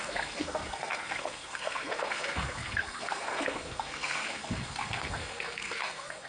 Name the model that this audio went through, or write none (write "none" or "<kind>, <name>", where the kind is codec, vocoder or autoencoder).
codec, SNAC